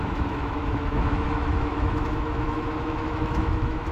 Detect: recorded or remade remade